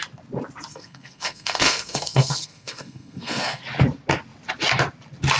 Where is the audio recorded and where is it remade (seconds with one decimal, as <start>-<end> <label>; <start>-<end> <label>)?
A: 0.0-0.7 recorded; 0.7-3.6 remade; 3.6-5.4 recorded